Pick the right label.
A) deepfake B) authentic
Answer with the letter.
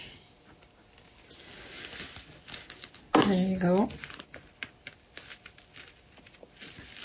B